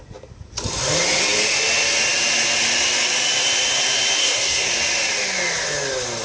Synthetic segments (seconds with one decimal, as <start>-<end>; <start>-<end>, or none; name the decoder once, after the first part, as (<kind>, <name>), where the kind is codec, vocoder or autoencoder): 4.2-4.7 (codec, SNAC)